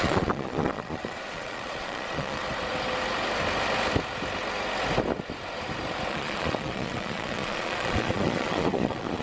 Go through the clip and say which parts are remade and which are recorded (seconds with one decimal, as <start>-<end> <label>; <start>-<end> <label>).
0.0-2.4 remade; 2.4-6.1 recorded; 6.1-9.2 remade